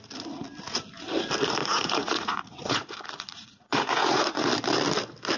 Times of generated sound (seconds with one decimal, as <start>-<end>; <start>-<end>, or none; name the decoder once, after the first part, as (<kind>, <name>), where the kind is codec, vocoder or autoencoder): 1.6-4.5 (vocoder, Vocos)